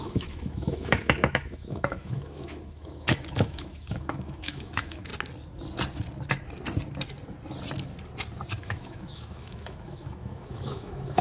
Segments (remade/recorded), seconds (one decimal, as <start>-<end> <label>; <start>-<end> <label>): 0.0-5.1 remade; 5.1-8.6 recorded; 8.6-11.2 remade